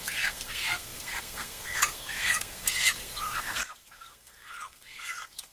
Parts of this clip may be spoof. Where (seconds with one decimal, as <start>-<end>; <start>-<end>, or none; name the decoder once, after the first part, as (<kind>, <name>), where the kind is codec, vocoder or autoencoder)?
0.0-5.5 (codec, SNAC)